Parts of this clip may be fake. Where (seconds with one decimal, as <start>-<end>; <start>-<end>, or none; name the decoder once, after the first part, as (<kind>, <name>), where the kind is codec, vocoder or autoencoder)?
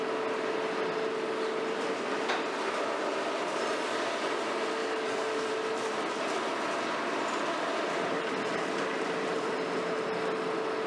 4.8-5.5 (codec, DAC)